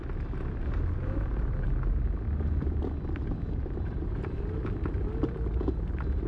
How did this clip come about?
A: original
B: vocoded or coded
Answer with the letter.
A